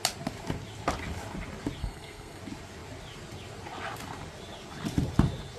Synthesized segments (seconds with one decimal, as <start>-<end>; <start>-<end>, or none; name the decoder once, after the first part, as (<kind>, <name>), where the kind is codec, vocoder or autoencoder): 1.8-2.4 (codec, SNAC)

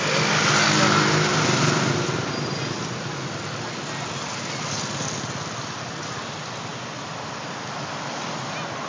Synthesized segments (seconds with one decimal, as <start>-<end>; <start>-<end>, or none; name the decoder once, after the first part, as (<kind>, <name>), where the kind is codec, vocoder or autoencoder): 1.3-1.9 (vocoder, BigVGAN v2)

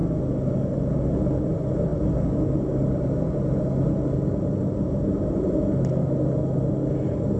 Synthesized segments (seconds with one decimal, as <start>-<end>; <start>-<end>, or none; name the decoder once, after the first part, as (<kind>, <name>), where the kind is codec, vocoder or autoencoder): none

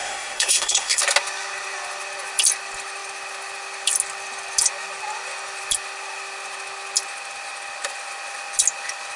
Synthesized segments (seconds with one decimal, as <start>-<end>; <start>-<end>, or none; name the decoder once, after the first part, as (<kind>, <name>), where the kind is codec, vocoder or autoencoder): 0.0-1.0 (codec, SNAC)

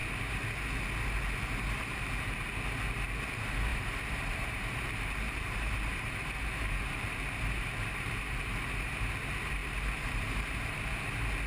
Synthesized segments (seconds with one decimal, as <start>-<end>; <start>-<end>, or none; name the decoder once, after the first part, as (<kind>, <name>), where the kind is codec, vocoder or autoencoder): 3.7-8.9 (vocoder, BigVGAN v2); 9.6-10.8

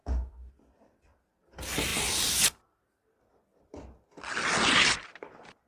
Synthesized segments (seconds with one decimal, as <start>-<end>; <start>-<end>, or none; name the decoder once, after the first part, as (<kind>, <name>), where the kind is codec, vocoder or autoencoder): 0.0-0.5 (autoencoder, DAC-VAE)